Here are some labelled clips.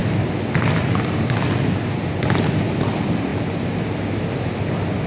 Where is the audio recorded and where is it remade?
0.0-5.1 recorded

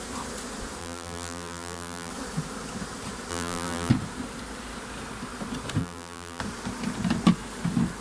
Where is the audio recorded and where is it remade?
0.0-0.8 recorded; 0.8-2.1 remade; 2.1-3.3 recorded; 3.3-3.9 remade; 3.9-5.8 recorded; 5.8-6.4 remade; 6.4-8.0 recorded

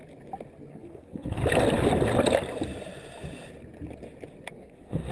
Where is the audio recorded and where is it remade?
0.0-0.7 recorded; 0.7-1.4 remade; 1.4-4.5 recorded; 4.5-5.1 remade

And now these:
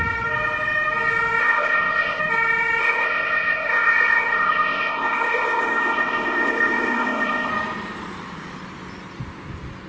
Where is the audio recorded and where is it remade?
0.0-1.4 recorded; 1.4-2.2 remade; 2.2-2.8 recorded; 2.8-7.5 remade; 7.5-9.9 recorded

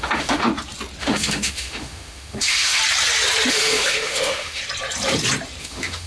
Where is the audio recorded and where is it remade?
0.0-0.5 remade; 0.5-1.0 recorded; 1.0-2.8 remade; 2.8-3.5 recorded; 3.5-4.6 remade; 4.6-5.6 recorded; 5.6-6.1 remade